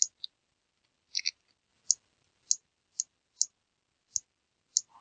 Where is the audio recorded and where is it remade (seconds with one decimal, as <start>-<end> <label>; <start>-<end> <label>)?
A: 0.0-5.0 recorded